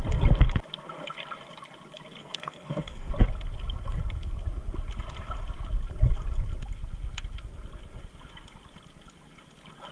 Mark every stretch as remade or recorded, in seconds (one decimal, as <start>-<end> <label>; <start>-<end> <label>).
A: 0.0-2.2 recorded; 2.2-3.1 remade; 3.1-9.9 recorded